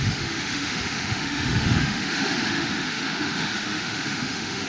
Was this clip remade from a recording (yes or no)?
yes